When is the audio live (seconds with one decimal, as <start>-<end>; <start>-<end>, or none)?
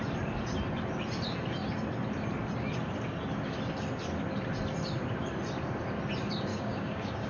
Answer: 0.0-6.5